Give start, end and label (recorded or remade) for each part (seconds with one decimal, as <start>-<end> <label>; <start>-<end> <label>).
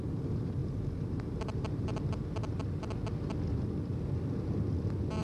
0.0-1.9 remade; 1.9-5.2 recorded